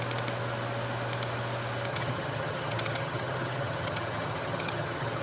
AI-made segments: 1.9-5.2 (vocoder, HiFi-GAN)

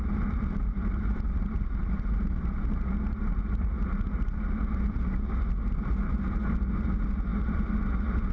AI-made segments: none

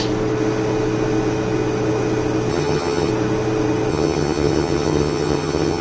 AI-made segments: 2.5-3.1 (vocoder, HiFi-GAN); 3.9-5.8

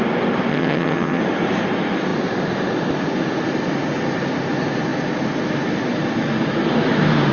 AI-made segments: 0.5-1.2 (vocoder, HiFi-GAN)